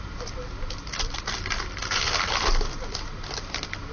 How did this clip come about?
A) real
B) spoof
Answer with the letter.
A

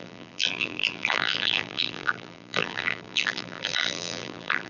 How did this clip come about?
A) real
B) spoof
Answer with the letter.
B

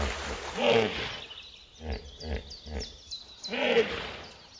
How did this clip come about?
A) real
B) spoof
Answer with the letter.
A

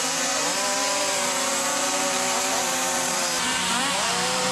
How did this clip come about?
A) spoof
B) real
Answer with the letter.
A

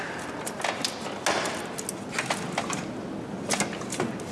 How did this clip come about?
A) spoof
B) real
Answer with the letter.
B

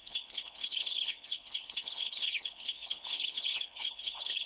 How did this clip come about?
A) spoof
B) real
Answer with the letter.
A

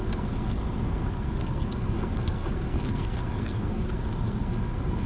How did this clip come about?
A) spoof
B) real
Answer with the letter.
A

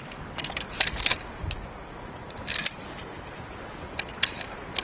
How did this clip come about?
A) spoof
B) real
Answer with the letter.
B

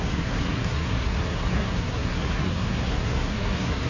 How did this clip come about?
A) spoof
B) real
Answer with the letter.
A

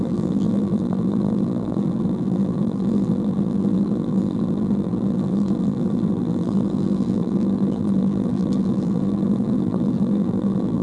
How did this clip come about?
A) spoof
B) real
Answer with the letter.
A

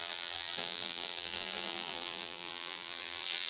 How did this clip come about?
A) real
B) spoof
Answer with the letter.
B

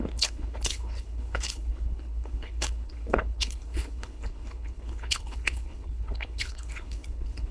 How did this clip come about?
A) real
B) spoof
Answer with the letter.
B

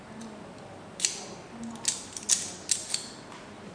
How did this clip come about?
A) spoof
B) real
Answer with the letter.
B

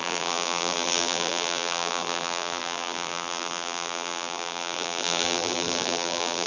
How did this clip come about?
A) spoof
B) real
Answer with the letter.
A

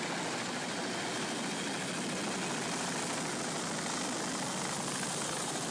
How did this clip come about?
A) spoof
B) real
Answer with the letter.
B